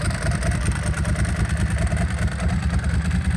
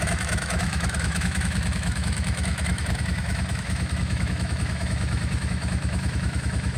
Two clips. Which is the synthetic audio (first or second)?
second